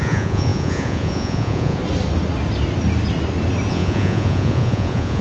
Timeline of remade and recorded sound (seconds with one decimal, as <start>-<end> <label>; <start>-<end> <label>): 0.0-1.8 remade; 1.8-3.7 recorded; 3.7-5.2 remade